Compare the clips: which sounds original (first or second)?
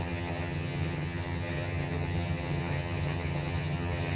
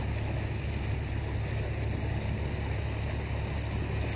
second